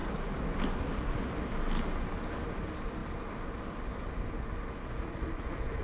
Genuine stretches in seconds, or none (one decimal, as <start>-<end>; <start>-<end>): 0.0-5.8